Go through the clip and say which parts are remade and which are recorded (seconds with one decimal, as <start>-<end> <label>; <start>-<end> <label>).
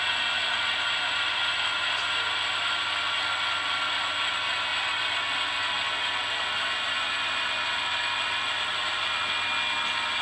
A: 0.0-4.7 recorded; 4.7-5.7 remade; 5.7-10.2 recorded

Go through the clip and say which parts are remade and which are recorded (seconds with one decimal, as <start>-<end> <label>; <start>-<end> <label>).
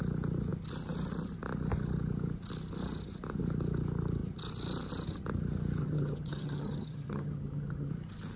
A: 0.0-5.8 recorded; 5.8-7.9 remade; 7.9-8.4 recorded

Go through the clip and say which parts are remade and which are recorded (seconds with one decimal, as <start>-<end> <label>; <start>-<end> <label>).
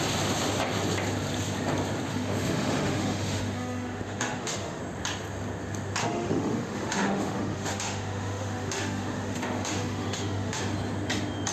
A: 0.0-2.1 recorded; 2.1-4.8 remade; 4.8-6.0 recorded; 6.0-10.6 remade; 10.6-11.5 recorded